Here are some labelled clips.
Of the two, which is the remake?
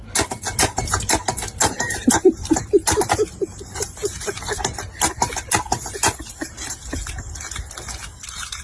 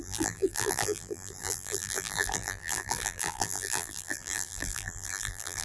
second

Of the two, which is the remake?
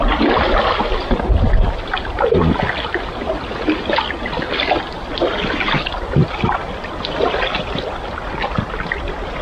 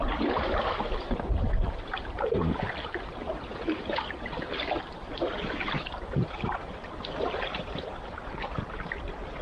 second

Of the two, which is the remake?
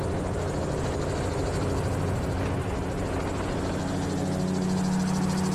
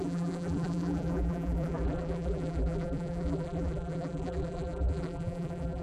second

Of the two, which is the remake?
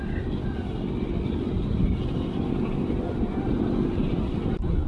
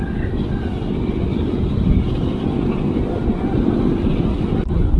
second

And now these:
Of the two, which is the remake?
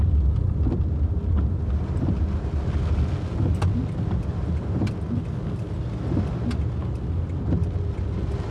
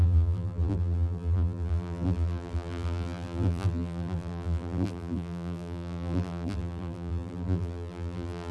second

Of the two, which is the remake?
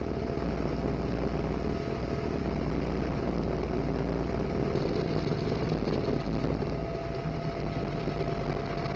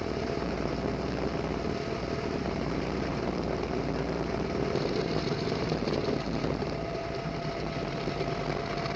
second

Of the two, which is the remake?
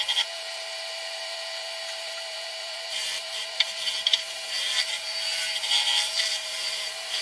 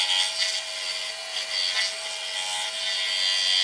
first